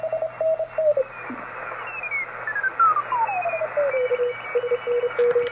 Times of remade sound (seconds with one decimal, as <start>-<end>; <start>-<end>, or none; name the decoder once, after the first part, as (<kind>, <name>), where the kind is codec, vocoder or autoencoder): none